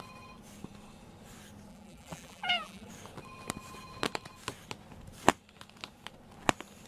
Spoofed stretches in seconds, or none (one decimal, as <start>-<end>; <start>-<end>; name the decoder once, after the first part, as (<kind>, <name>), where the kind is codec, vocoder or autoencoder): 1.7-2.9 (vocoder, BigVGAN v2)